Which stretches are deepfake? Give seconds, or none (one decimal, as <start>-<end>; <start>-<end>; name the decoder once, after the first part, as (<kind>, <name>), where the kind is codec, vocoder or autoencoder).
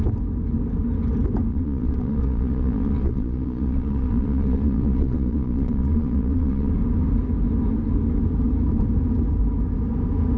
1.5-6.7 (vocoder, Vocos)